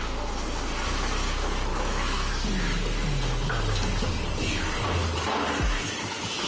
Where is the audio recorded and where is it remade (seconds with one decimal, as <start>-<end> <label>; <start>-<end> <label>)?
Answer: 0.0-1.7 recorded; 1.7-2.3 remade; 2.3-6.5 recorded